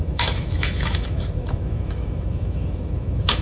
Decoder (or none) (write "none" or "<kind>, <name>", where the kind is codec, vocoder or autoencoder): autoencoder, DAC-VAE